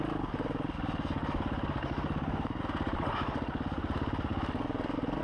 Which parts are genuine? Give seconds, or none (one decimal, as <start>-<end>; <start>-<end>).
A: 0.0-5.2